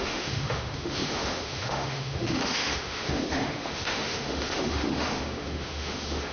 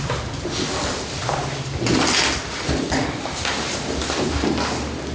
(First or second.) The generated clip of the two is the first